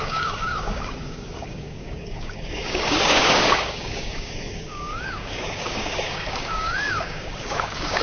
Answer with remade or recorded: remade